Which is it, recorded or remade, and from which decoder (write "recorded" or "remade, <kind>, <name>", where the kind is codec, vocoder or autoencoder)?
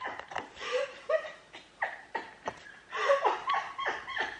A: remade, vocoder, BigVGAN v2